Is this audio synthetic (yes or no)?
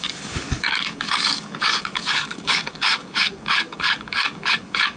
yes